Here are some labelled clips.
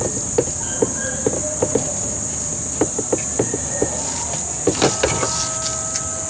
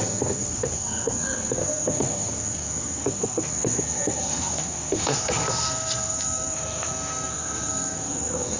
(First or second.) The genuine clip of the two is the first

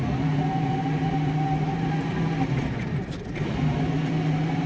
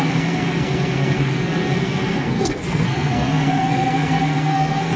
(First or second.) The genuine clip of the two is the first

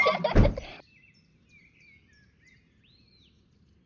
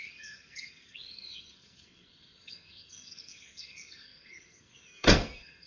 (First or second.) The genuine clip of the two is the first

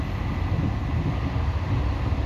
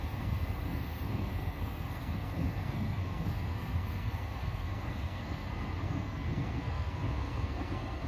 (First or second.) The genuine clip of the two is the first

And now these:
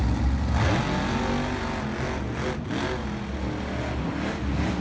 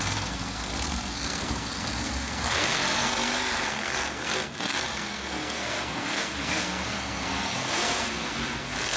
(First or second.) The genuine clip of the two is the first